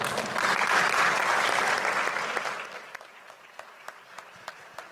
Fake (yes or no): no